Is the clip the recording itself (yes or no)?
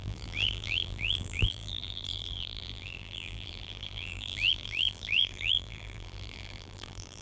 no